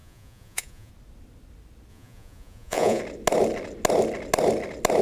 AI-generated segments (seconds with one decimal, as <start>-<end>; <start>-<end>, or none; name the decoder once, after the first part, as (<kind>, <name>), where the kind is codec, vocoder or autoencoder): 0.0-0.9 (vocoder, Vocos); 1.9-3.0